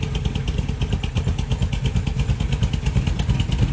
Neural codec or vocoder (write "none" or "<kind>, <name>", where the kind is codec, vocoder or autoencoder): none